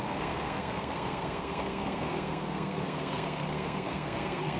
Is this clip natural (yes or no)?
no